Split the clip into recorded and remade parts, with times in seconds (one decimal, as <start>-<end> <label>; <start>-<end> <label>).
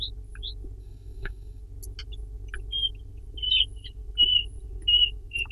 0.0-0.8 recorded; 0.8-1.6 remade; 1.6-5.5 recorded